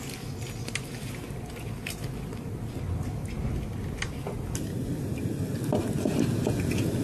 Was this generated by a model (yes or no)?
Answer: no